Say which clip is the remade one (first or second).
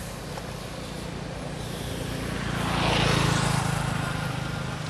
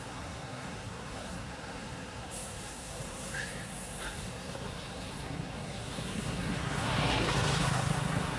second